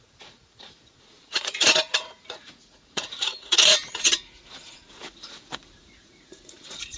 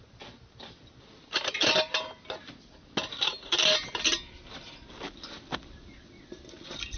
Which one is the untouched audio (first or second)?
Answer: second